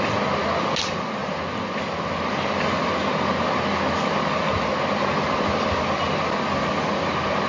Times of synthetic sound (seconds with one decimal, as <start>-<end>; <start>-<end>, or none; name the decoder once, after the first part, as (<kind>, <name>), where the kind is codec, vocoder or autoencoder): none

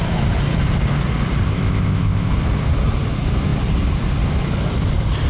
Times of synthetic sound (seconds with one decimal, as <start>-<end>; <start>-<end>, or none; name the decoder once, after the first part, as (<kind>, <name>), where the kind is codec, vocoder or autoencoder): 1.4-2.3 (codec, ZipCodec)

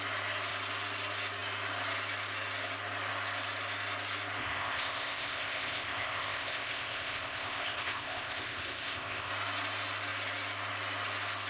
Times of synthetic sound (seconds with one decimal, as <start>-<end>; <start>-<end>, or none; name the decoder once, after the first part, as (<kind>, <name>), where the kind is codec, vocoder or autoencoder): 4.4-9.3 (codec, ZipCodec)

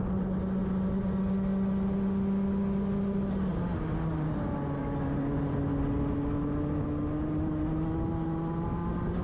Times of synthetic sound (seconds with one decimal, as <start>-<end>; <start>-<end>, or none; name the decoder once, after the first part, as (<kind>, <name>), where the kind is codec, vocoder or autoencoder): none

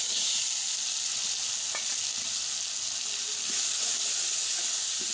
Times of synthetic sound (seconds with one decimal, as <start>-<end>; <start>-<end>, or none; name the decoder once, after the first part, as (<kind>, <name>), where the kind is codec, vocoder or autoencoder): none

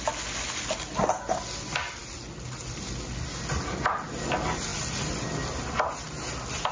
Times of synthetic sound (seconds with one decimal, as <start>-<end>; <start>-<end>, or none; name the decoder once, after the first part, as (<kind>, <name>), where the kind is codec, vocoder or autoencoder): none

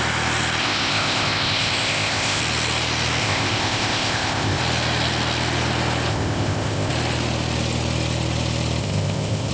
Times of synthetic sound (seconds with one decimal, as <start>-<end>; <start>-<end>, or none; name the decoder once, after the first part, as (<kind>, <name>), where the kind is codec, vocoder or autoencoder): 0.6-2.4 (codec, ZipCodec); 3.2-4.6; 6.1-6.9; 8.8-9.5

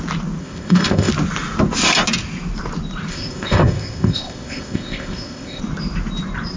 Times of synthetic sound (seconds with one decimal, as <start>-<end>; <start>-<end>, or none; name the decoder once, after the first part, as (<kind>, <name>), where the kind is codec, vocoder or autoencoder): 0.4-1.1 (codec, ZipCodec); 3.1-5.6